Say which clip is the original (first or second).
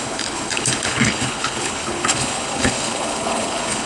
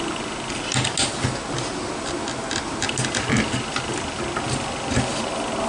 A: second